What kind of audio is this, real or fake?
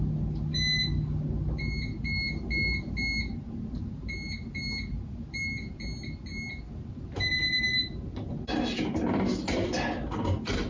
real